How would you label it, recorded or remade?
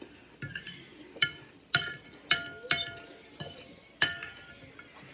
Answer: recorded